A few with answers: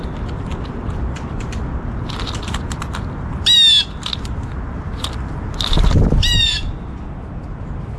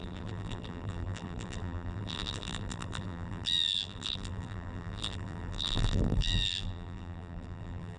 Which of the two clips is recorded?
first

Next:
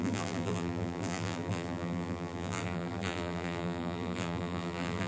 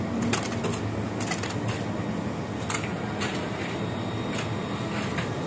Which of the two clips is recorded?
second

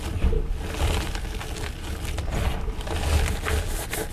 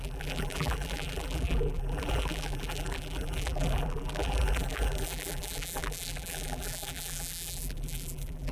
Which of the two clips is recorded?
first